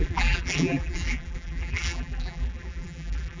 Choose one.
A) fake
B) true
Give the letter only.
A